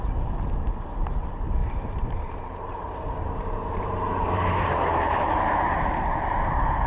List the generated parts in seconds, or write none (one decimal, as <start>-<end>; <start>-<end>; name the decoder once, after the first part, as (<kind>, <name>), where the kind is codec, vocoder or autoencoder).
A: 1.6-5.7 (vocoder, BigVGAN v2)